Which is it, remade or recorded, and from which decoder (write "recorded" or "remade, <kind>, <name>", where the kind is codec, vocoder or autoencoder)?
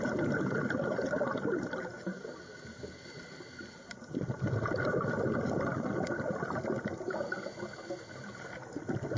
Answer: recorded